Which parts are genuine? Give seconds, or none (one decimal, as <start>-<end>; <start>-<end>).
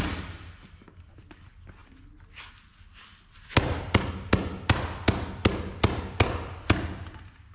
0.0-7.5